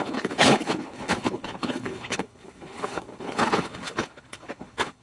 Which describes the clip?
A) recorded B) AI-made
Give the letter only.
B